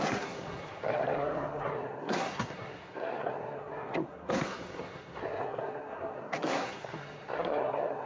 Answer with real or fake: fake